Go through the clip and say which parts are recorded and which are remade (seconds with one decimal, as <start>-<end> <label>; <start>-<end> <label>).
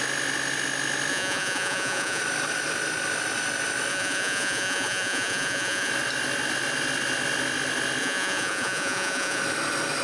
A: 0.0-1.1 recorded; 1.1-2.2 remade; 2.2-3.9 recorded; 3.9-5.9 remade; 5.9-8.0 recorded; 8.0-9.4 remade; 9.4-10.0 recorded